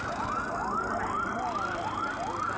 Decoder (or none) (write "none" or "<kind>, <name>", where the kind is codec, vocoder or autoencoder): none